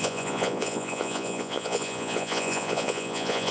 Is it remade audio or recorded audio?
remade